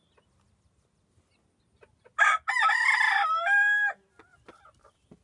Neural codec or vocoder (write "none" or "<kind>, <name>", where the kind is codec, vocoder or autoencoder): none